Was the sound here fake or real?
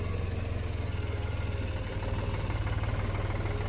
real